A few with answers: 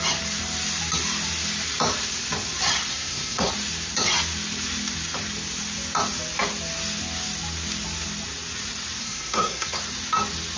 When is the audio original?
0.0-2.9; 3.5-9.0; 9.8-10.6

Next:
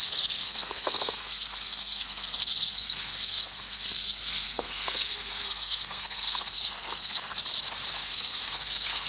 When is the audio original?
7.4-7.9

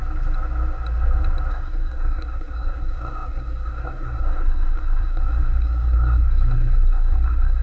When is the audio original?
0.0-1.5

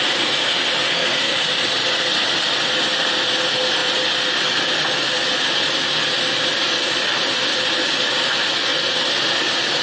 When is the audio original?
0.0-0.9; 1.5-9.8

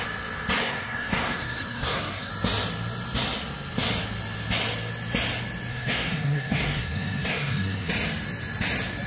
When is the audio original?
0.0-0.6; 2.3-5.7; 7.9-9.1

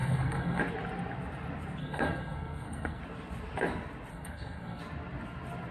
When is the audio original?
0.6-1.8; 3.0-4.1; 4.8-5.7